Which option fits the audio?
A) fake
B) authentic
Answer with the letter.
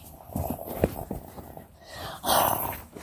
A